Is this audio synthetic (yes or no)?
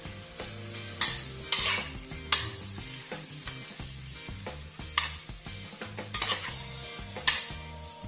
no